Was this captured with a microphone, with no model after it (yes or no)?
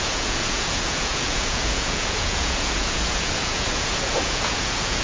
no